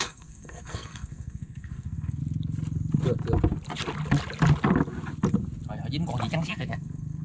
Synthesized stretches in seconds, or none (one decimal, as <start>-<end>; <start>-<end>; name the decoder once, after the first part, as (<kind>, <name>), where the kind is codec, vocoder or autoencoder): 0.0-2.2 (codec, SNAC); 6.5-7.2